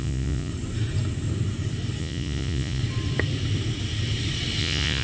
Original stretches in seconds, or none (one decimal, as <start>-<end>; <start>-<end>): 0.5-2.0; 2.8-4.6